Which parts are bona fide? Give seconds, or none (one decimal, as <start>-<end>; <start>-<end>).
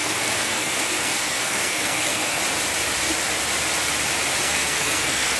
2.4-4.4